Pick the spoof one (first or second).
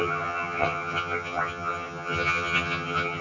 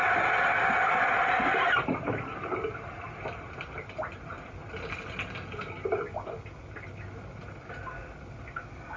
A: first